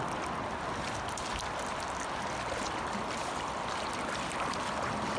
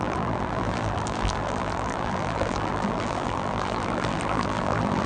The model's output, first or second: second